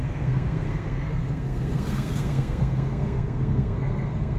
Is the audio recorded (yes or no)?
no